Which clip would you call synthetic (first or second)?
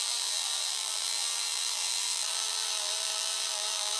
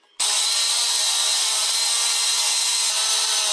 first